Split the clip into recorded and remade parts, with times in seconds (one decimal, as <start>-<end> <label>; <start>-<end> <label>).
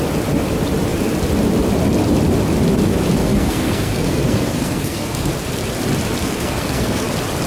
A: 0.0-3.2 recorded; 3.2-5.3 remade; 5.3-6.2 recorded; 6.2-7.1 remade; 7.1-7.5 recorded